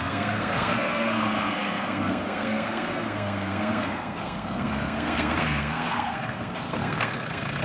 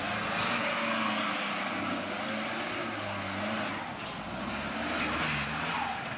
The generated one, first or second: first